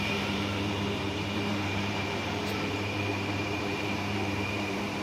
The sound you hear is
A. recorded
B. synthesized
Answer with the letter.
B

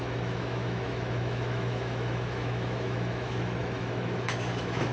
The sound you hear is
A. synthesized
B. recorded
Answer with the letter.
A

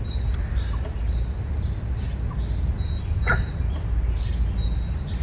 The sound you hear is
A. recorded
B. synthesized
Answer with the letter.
A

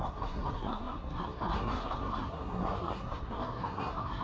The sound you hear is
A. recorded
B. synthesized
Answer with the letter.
B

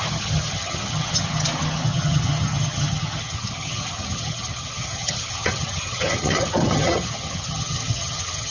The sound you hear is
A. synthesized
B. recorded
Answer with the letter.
A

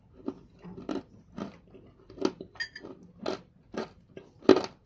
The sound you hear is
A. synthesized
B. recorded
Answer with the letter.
B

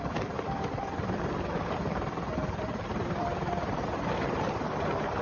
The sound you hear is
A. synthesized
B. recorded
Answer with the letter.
A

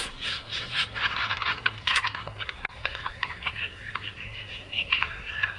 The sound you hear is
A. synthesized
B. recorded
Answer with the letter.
A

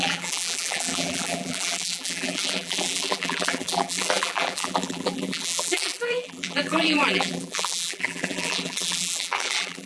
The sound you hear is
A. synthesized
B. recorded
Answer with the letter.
A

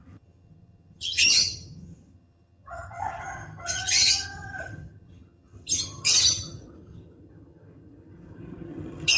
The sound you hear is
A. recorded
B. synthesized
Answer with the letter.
B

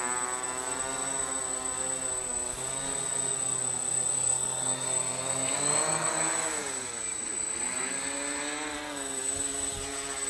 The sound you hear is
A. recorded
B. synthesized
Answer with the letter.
A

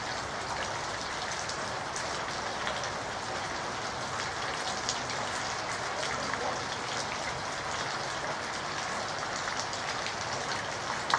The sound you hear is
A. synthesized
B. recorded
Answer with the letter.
B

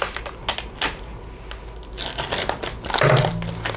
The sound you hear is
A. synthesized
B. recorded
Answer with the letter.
B